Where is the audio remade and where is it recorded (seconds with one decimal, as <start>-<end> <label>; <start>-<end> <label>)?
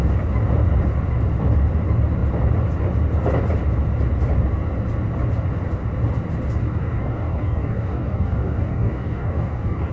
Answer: 0.0-6.6 recorded; 6.6-9.9 remade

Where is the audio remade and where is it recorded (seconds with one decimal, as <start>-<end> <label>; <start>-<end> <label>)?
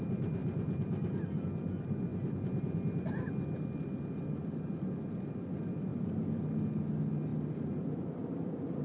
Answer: 0.0-0.4 recorded; 0.4-1.4 remade; 1.4-5.9 recorded; 5.9-6.4 remade; 6.4-7.3 recorded; 7.3-8.8 remade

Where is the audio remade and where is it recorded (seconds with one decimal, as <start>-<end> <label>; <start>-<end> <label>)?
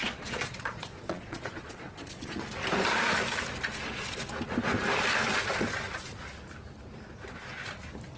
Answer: 0.0-2.4 remade; 2.4-8.2 recorded